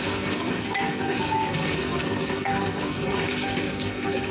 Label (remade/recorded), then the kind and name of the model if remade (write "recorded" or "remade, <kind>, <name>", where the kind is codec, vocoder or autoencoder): remade, codec, SNAC